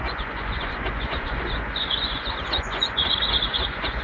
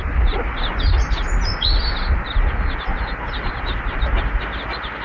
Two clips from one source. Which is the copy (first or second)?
first